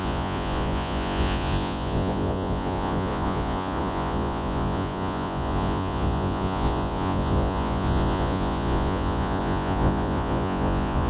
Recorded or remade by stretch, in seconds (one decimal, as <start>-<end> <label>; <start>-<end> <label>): 0.0-11.1 remade